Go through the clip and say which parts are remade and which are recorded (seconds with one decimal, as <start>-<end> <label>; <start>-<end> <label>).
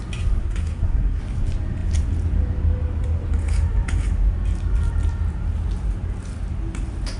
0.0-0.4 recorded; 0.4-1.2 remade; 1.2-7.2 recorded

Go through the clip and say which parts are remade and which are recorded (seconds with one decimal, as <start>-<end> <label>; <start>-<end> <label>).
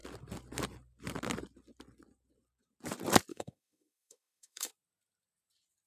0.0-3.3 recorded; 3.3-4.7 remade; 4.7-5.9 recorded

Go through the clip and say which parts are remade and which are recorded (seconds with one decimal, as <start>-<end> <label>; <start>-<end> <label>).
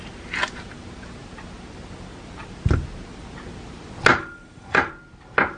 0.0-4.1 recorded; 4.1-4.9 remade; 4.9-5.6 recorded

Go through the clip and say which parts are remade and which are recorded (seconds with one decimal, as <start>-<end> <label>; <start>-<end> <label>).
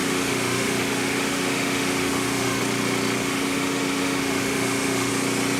0.0-2.6 remade; 2.6-3.2 recorded; 3.2-5.1 remade; 5.1-5.6 recorded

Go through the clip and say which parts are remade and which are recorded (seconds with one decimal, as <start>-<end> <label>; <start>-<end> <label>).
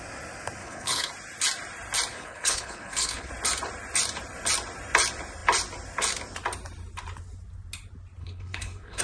0.0-0.6 recorded; 0.6-1.1 remade; 1.1-2.1 recorded; 2.1-3.3 remade; 3.3-8.2 recorded; 8.2-9.0 remade